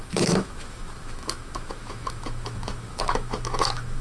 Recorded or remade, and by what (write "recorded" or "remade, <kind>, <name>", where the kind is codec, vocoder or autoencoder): remade, autoencoder, DAC-VAE